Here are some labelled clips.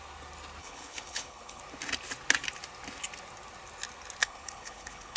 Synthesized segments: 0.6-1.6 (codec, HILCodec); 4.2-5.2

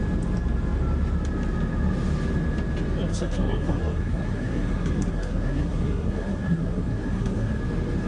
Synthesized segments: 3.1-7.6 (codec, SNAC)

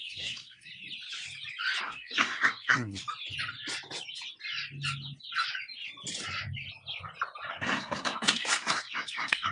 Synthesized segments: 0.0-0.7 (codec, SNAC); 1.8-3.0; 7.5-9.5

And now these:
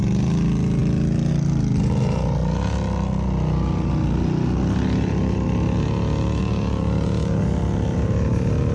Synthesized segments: none

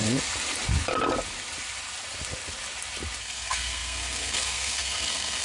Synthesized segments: 3.2-5.4 (codec, SNAC)

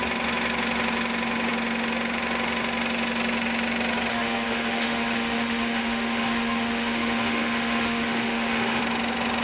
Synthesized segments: 4.1-8.8 (autoencoder, DAC-VAE)

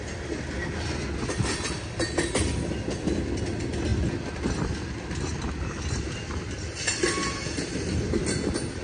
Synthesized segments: none